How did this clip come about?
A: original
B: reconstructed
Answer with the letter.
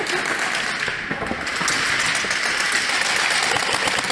A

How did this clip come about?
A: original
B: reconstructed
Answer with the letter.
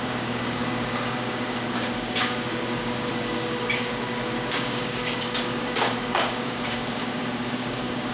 B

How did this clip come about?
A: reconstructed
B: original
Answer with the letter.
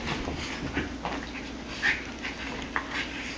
B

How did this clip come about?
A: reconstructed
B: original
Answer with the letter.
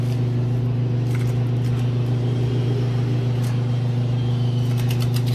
B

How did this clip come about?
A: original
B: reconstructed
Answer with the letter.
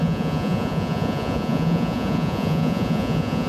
B